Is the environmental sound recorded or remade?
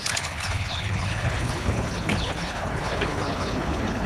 remade